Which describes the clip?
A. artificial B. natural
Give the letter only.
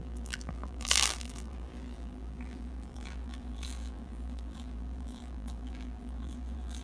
A